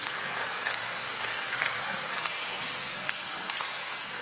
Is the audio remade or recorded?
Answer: remade